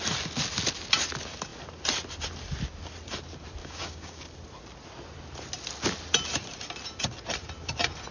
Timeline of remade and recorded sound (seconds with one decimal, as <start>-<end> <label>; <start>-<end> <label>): 0.0-3.6 recorded; 3.6-4.2 remade; 4.2-8.1 recorded